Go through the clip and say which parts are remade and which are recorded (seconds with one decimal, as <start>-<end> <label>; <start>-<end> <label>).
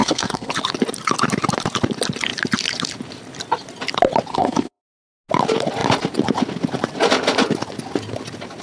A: 0.0-0.5 remade; 0.5-4.3 recorded; 4.3-4.8 remade; 4.8-8.6 recorded